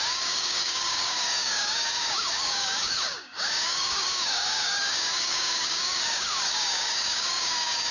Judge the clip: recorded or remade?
remade